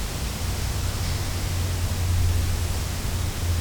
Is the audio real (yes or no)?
yes